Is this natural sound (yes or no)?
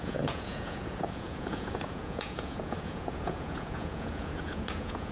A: no